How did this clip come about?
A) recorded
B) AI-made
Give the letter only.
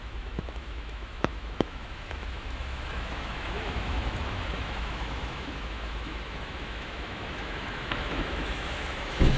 B